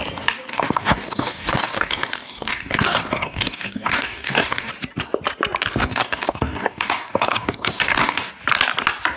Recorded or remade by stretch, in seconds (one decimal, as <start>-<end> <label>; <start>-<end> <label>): 0.0-0.5 recorded; 0.5-4.7 remade; 4.7-5.8 recorded; 5.8-8.3 remade; 8.3-9.2 recorded